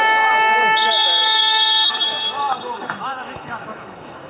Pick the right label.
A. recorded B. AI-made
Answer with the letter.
B